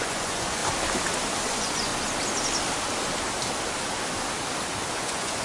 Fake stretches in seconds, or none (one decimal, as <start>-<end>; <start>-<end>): 0.0-0.6; 1.5-1.9; 4.9-5.4